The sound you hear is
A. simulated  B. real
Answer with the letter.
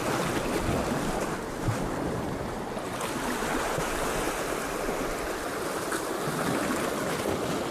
B